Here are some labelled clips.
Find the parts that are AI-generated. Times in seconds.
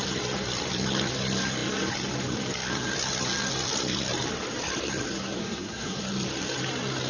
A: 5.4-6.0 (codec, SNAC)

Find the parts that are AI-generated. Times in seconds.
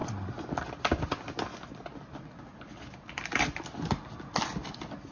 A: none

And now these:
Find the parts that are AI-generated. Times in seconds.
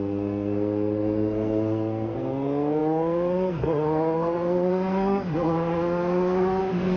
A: 0.0-7.0 (codec, SNAC)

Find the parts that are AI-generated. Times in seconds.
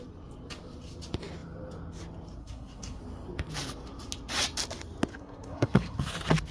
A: 2.4-3.0 (codec, SNAC); 5.1-6.1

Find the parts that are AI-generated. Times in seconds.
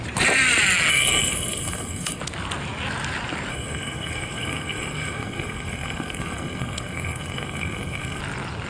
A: 0.9-2.2 (codec, SNAC); 3.5-8.2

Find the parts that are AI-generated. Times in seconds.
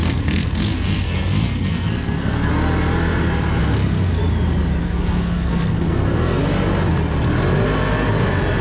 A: 0.0-2.5 (codec, SNAC); 3.6-4.2; 4.8-6.4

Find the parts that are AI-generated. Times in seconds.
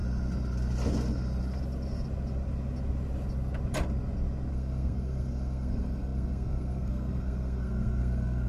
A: 4.5-8.5 (codec, SNAC)